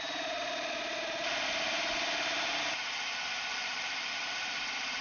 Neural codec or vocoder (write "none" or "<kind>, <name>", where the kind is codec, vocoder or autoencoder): vocoder, BigVGAN v2